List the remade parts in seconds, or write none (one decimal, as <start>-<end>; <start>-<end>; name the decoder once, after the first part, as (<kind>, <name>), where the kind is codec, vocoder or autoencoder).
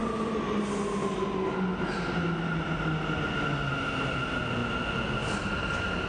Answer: none